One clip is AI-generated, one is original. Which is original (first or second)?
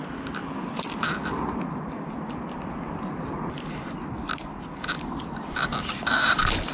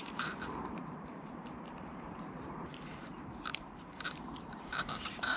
first